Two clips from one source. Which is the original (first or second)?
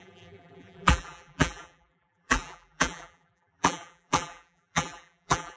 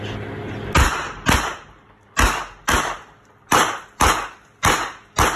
second